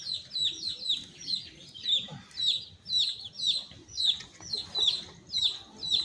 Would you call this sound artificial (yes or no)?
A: no